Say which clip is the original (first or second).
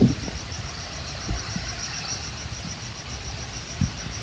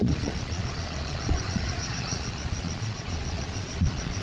first